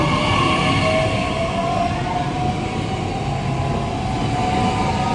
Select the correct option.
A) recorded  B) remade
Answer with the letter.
A